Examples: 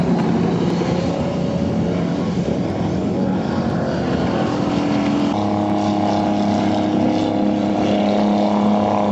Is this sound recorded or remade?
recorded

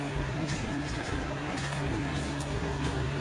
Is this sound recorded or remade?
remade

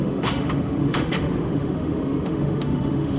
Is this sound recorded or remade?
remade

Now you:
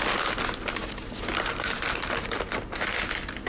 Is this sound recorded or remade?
recorded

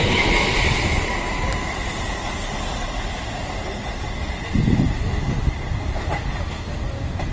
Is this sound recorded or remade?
recorded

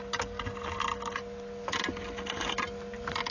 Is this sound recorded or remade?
recorded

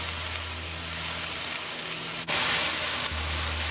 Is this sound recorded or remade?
recorded